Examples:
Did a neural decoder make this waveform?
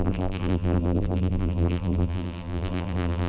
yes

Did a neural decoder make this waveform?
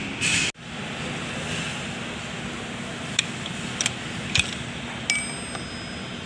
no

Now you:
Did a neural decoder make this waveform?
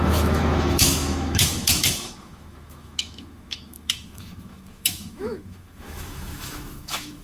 yes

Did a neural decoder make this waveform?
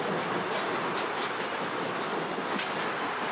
no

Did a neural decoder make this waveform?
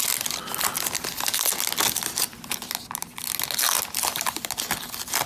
no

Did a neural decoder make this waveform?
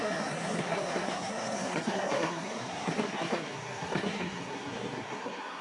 yes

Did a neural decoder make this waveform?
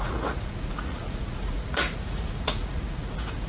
yes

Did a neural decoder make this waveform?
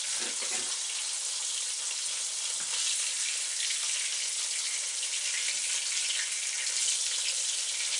no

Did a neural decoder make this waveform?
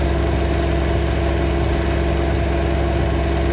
no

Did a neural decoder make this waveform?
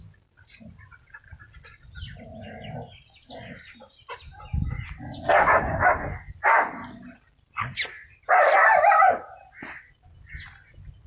no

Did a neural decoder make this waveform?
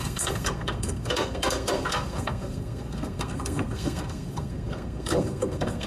yes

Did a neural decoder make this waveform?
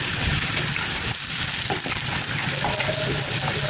no